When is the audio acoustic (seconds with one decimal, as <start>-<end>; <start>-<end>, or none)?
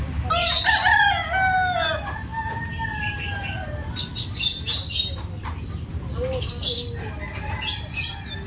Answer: 0.0-8.5